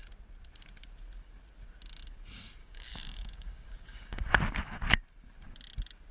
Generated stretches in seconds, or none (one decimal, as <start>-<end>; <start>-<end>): 2.6-4.3